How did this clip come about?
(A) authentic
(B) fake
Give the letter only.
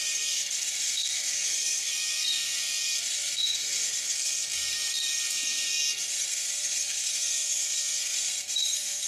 B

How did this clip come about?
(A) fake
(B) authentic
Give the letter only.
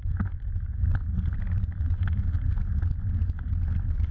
B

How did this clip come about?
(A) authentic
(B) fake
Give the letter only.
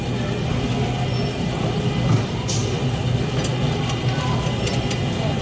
A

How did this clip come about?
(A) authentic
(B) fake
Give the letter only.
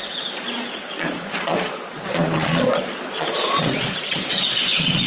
B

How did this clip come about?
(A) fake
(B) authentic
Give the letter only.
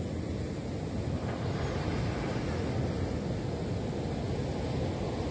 B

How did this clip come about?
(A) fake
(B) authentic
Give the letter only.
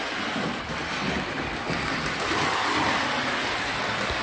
B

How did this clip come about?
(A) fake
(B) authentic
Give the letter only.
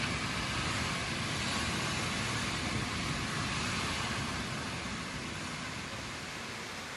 B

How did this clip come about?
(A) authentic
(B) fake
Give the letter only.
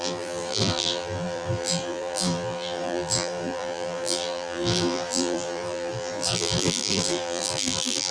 B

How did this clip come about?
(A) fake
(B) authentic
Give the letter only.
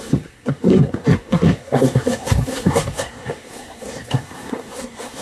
A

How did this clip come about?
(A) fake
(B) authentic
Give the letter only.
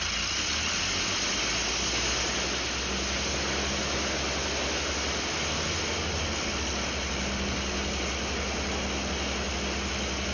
B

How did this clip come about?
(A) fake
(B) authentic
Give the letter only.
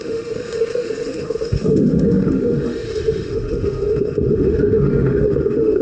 A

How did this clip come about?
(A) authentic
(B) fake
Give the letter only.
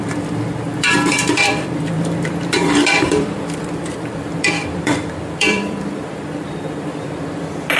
B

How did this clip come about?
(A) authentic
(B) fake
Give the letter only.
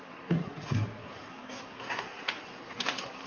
B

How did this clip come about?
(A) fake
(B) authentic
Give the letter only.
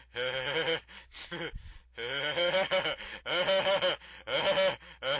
B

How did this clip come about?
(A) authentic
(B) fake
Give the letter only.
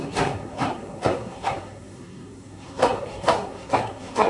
B